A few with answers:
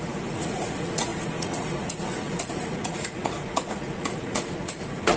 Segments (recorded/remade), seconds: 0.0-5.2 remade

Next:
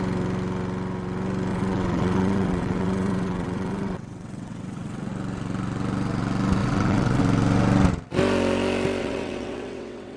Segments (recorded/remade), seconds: 0.0-1.5 recorded; 1.5-5.1 remade; 5.1-6.6 recorded; 6.6-7.2 remade; 7.2-9.0 recorded; 9.0-10.2 remade

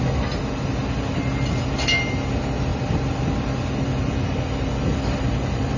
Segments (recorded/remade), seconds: 0.0-5.8 recorded